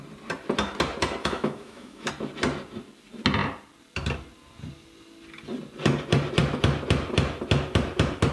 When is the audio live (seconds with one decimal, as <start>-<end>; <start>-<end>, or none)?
0.0-1.2; 2.1-8.3